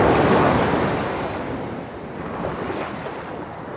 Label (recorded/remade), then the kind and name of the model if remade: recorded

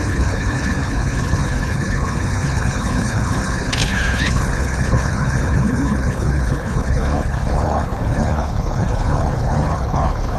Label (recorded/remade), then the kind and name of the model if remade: remade, codec, HILCodec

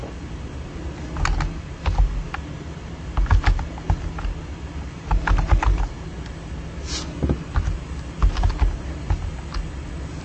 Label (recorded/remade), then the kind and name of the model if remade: recorded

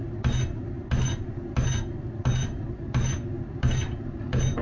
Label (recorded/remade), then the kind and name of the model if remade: recorded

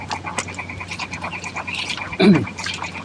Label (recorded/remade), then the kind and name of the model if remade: recorded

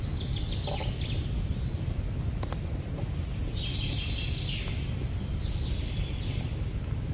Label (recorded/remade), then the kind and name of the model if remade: recorded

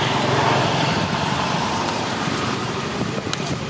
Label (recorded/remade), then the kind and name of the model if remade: remade, vocoder, BigVGAN v2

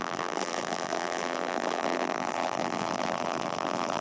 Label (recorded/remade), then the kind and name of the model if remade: remade, vocoder, BigVGAN v2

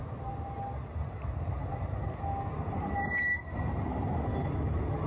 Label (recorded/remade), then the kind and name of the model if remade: recorded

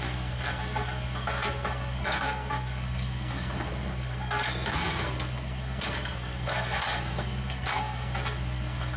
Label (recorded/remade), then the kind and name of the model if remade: remade, codec, SNAC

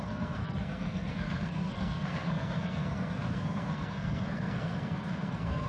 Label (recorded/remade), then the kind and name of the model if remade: remade, codec, SNAC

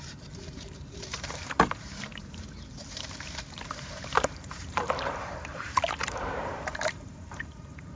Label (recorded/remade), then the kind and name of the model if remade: remade, vocoder, BigVGAN v2